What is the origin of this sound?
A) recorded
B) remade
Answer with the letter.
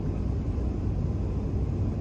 A